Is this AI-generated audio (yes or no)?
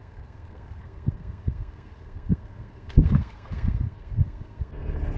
yes